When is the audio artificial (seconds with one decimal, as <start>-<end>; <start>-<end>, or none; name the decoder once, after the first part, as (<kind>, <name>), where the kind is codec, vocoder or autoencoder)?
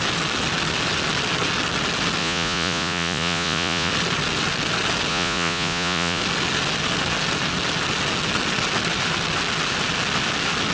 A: 2.2-3.9 (vocoder, Vocos); 5.1-6.2